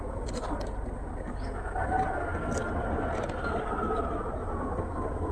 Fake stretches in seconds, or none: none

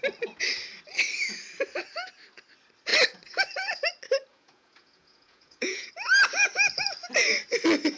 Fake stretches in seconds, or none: 4.3-5.9

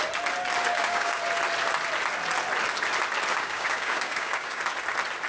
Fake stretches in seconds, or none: 0.7-1.2; 3.3-4.6

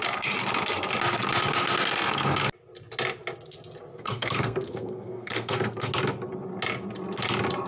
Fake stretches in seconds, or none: 3.9-5.9

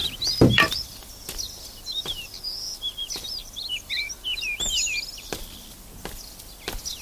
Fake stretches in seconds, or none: 0.0-1.0; 3.4-4.1

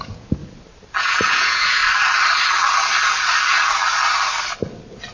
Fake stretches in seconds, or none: 0.0-0.4; 1.0-1.8